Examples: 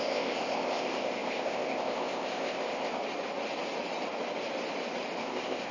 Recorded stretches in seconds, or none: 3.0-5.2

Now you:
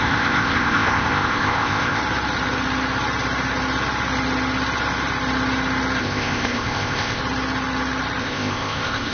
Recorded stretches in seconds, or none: 2.0-6.0; 7.2-8.2